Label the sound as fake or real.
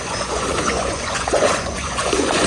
fake